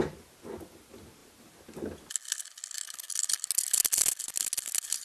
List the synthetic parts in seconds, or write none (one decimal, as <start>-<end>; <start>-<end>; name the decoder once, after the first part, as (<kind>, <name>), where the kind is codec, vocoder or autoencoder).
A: none